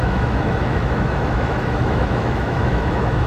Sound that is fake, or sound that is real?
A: fake